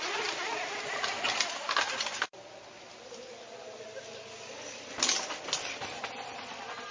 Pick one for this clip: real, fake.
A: real